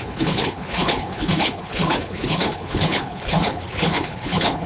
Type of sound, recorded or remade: remade